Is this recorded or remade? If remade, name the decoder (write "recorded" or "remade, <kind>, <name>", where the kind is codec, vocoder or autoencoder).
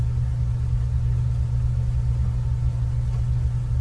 recorded